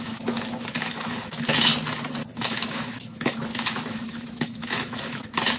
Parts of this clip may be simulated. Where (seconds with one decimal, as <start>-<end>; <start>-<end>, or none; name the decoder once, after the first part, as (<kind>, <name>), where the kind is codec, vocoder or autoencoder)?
0.0-1.7 (autoencoder, DAC-VAE); 2.5-5.6